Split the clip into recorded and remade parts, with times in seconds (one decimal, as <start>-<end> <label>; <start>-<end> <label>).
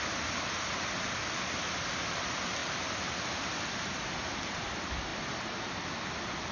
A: 0.0-6.5 recorded